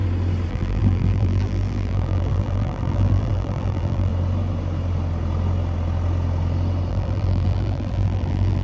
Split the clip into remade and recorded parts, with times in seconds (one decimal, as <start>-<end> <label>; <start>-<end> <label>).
0.0-0.5 recorded; 0.5-4.1 remade; 4.1-6.9 recorded; 6.9-8.6 remade